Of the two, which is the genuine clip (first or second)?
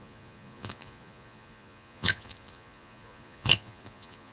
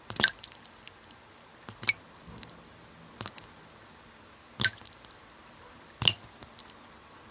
second